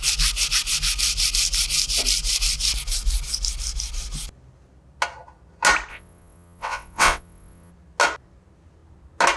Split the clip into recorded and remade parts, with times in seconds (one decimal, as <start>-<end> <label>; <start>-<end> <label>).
0.0-5.9 recorded; 5.9-7.7 remade; 7.7-9.4 recorded